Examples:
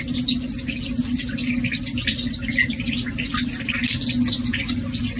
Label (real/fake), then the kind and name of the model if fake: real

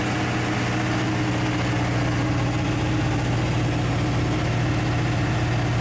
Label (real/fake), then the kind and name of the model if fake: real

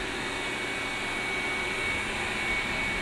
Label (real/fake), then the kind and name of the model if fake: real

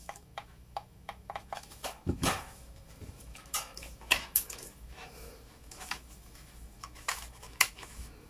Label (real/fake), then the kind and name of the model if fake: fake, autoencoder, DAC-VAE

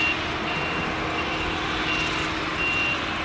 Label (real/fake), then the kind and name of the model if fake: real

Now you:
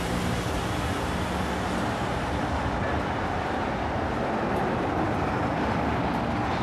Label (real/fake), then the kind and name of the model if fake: real